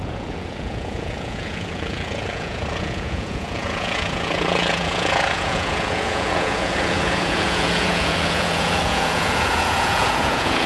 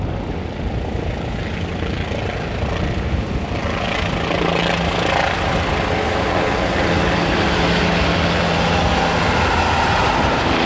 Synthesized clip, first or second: first